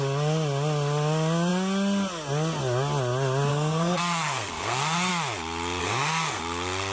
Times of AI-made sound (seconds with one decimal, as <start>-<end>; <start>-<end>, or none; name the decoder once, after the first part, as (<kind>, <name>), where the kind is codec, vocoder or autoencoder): 3.5-5.1 (codec, SNAC); 5.8-6.4